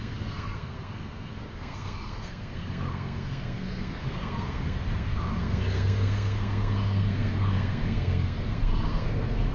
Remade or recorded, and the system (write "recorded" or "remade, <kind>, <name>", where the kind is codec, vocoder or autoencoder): remade, codec, SNAC